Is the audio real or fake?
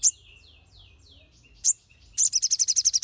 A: real